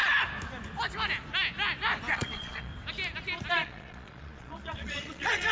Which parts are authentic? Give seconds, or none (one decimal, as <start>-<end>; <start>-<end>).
0.0-2.1; 2.7-3.5